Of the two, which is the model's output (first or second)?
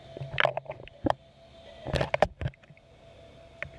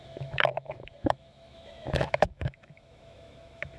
second